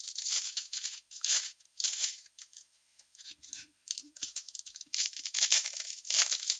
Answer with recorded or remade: remade